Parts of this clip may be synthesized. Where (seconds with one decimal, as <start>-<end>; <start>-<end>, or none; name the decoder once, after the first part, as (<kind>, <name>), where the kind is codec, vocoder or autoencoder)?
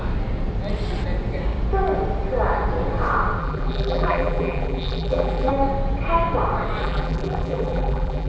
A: 3.4-5.5 (vocoder, BigVGAN v2); 6.8-8.3